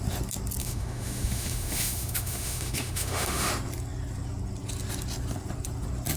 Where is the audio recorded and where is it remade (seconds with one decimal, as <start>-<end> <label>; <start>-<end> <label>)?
0.0-0.6 recorded; 0.6-3.5 remade; 3.5-6.2 recorded

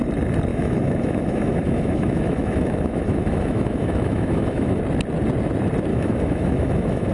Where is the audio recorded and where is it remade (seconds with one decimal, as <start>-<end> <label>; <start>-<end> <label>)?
0.0-0.5 recorded; 0.5-4.8 remade; 4.8-5.9 recorded; 5.9-7.1 remade

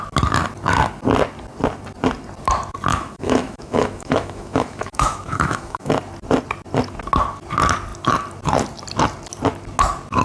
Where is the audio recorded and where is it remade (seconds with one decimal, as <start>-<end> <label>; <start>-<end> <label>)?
0.0-2.9 recorded; 2.9-5.9 remade; 5.9-10.2 recorded

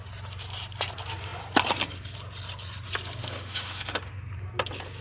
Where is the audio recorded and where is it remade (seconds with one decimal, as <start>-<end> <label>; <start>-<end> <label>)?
0.0-3.2 recorded; 3.2-4.2 remade; 4.2-5.0 recorded

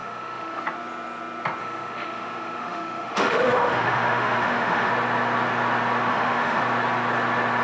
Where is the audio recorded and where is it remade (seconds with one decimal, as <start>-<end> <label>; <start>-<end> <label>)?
0.0-0.6 remade; 0.6-1.6 recorded; 1.6-4.9 remade; 4.9-6.1 recorded; 6.1-6.6 remade; 6.6-7.6 recorded

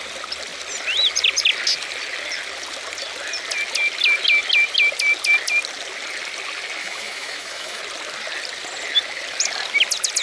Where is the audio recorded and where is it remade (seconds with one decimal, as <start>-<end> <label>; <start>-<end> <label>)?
0.0-6.8 recorded; 6.8-7.8 remade; 7.8-10.2 recorded

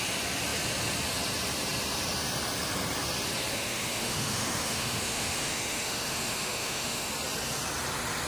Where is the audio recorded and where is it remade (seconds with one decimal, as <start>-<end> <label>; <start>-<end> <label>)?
0.0-3.5 recorded; 3.5-7.1 remade; 7.1-8.3 recorded